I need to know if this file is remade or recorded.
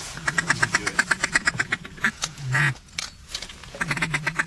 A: remade